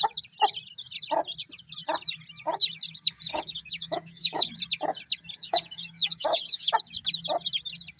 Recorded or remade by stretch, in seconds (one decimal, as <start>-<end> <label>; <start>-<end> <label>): 0.0-3.3 recorded; 3.3-4.5 remade; 4.5-5.4 recorded; 5.4-6.7 remade; 6.7-8.0 recorded